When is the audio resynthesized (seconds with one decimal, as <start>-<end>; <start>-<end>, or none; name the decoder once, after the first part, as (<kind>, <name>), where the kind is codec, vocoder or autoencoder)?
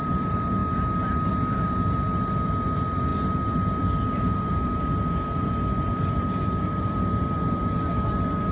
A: 0.0-0.6 (vocoder, BigVGAN v2); 1.3-8.5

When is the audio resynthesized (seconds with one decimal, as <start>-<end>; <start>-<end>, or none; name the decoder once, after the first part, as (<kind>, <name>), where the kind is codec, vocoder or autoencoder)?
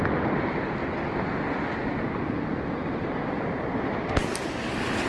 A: none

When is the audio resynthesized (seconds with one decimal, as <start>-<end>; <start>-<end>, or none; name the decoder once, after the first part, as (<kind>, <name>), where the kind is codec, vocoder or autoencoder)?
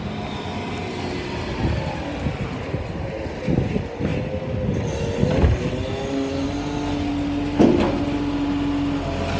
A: none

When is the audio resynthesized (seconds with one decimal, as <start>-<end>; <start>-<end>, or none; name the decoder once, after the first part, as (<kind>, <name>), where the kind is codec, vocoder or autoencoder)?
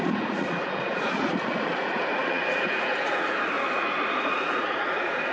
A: 0.0-5.3 (vocoder, Vocos)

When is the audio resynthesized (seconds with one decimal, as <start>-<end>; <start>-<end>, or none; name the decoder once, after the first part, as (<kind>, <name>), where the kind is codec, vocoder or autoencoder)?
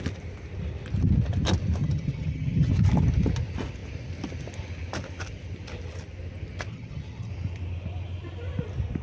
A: 1.8-2.7 (vocoder, HiFi-GAN); 6.7-7.3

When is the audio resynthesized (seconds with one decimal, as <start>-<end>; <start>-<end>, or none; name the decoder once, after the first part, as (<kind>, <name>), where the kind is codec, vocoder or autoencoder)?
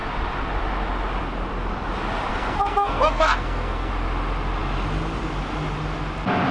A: 2.3-3.9 (codec, SNAC)